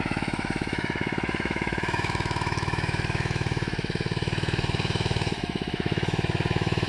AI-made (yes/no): yes